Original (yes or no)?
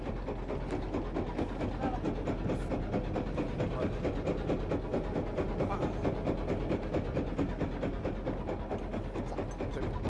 yes